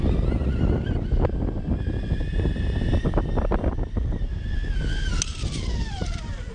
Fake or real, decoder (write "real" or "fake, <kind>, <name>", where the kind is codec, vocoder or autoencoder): real